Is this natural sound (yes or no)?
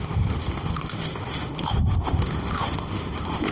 no